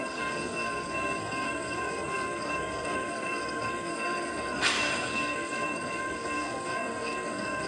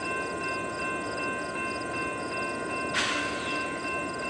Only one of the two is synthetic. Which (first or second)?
first